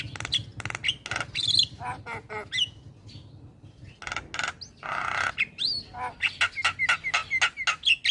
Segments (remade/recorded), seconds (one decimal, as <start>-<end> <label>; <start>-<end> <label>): 0.0-8.1 recorded